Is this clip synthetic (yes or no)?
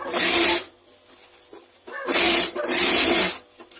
no